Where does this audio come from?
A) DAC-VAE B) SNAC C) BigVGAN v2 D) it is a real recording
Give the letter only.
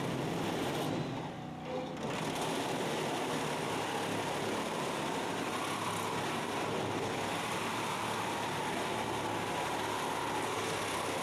D